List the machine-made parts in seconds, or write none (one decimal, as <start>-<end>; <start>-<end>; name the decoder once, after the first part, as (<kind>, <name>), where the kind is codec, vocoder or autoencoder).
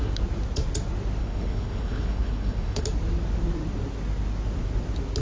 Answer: 1.2-2.8 (codec, HILCodec)